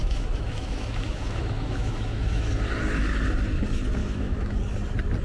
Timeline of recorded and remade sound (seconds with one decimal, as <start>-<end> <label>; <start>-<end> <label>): 0.0-2.5 remade; 2.5-4.0 recorded; 4.0-4.6 remade; 4.6-5.2 recorded